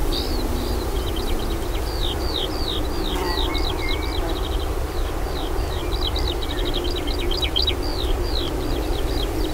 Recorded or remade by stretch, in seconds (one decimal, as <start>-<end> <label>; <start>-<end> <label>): 0.0-1.1 remade; 1.1-9.5 recorded